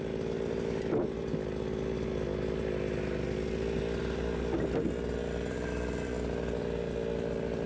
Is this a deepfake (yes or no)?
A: no